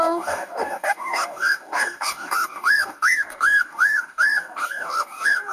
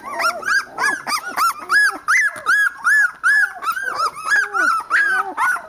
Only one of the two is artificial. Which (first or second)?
first